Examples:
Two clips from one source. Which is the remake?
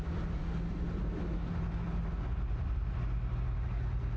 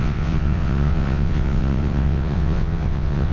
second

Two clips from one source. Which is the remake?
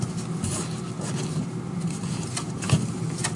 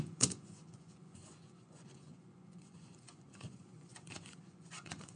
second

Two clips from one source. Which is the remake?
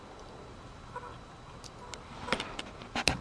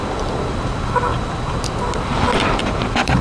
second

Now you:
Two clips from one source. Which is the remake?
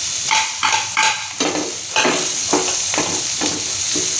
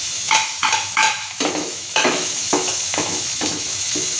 second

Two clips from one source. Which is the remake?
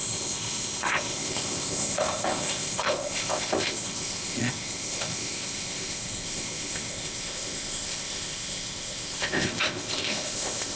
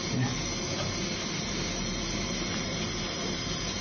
first